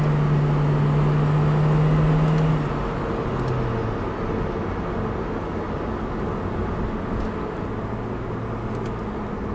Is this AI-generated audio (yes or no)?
no